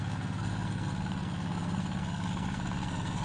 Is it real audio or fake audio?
fake